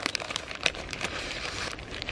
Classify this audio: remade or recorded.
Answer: remade